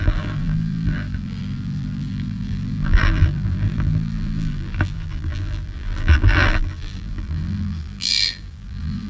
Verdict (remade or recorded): remade